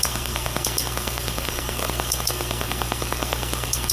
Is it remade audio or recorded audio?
remade